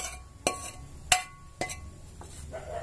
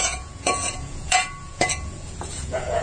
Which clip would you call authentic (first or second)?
first